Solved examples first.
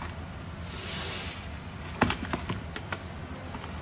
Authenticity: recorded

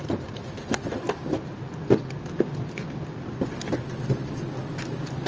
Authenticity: recorded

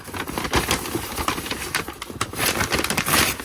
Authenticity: recorded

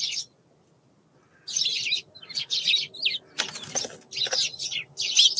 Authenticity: recorded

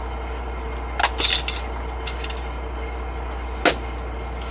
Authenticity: recorded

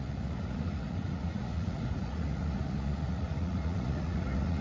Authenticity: remade